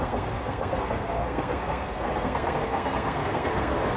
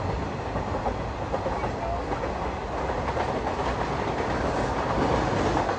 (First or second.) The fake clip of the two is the first